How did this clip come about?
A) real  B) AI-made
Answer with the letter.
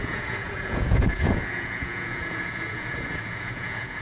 B